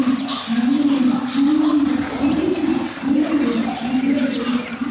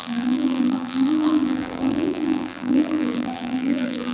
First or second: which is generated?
second